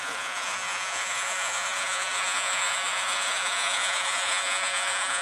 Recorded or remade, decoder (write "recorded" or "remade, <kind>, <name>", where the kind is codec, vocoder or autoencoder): remade, vocoder, Vocos